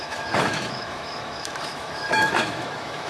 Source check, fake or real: fake